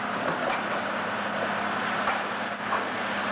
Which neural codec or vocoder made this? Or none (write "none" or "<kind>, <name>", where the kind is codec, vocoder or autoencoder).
none